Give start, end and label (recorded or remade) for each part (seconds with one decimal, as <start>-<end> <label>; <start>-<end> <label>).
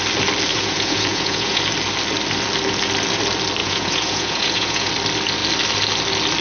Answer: 0.0-0.5 recorded; 0.5-1.6 remade; 1.6-3.6 recorded; 3.6-4.9 remade; 4.9-6.4 recorded